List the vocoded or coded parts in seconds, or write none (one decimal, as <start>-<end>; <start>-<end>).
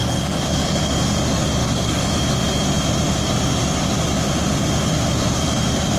0.0-1.0; 1.6-2.1